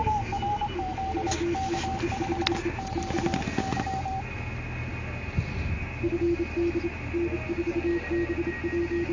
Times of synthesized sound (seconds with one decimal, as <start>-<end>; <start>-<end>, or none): none